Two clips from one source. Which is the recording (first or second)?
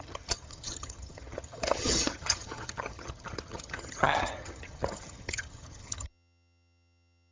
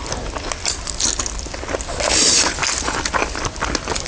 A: second